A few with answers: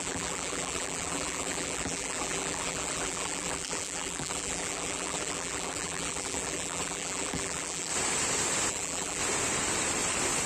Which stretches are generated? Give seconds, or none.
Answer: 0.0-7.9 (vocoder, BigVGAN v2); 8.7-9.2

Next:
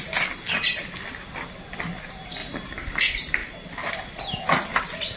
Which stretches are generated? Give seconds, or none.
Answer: 2.4-3.0 (vocoder, BigVGAN v2); 3.4-3.9

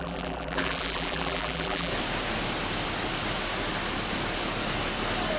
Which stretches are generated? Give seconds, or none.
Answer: 0.0-1.9 (vocoder, BigVGAN v2)

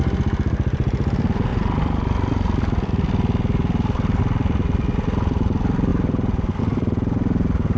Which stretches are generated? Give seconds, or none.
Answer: 0.0-7.8 (vocoder, BigVGAN v2)

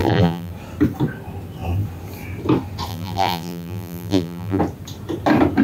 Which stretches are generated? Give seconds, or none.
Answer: 0.0-0.5 (vocoder, BigVGAN v2); 2.9-4.6

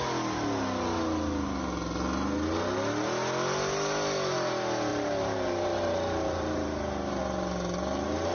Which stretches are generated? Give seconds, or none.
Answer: 4.9-7.2 (vocoder, BigVGAN v2)

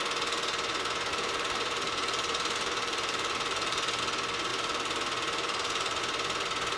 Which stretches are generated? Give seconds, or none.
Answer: 1.1-4.0 (vocoder, BigVGAN v2); 4.5-6.0

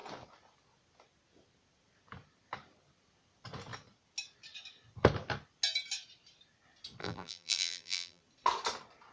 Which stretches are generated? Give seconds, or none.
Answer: 7.0-8.2 (vocoder, BigVGAN v2)